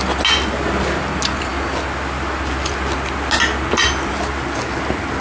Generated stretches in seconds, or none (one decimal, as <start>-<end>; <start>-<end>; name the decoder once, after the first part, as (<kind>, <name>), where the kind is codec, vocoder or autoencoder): none